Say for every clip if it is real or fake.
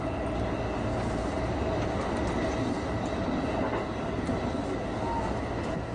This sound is real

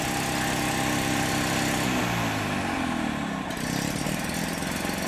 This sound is real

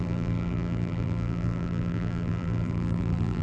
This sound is fake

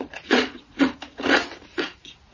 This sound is fake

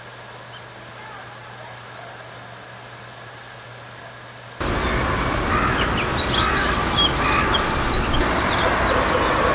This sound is real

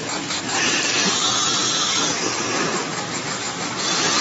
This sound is real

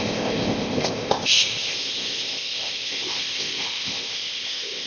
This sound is fake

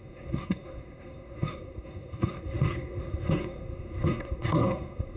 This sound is fake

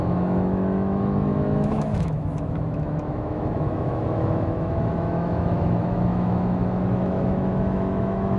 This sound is fake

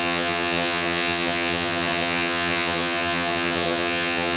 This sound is fake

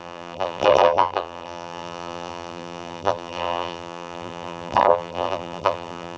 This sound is fake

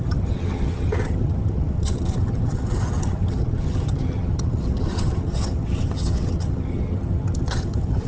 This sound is fake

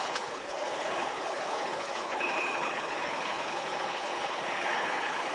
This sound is fake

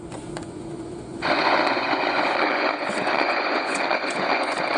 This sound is fake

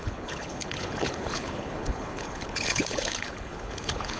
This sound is fake